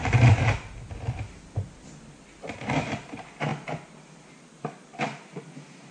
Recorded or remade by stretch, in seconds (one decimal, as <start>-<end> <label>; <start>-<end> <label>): 0.0-5.9 recorded